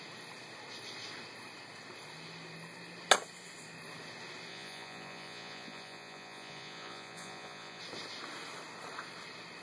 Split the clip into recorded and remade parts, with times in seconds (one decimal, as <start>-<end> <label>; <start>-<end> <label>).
0.0-4.5 recorded; 4.5-7.8 remade; 7.8-9.6 recorded